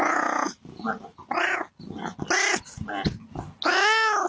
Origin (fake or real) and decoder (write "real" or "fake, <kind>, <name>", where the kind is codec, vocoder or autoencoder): real